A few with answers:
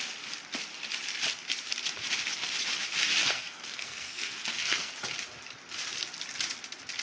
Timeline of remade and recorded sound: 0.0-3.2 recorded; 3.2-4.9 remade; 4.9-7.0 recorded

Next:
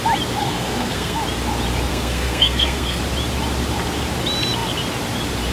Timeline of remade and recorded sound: 0.0-0.4 recorded; 0.4-1.2 remade; 1.2-1.9 recorded; 1.9-3.0 remade; 3.0-5.5 recorded

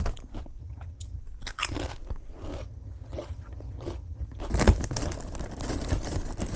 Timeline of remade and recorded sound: 0.0-0.6 recorded; 0.6-1.2 remade; 1.2-2.6 recorded; 2.6-4.4 remade; 4.4-6.6 recorded